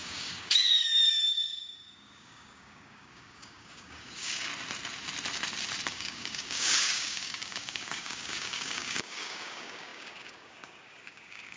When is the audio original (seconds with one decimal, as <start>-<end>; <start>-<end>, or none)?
4.5-5.9